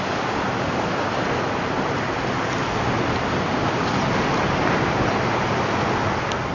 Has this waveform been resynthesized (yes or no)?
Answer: no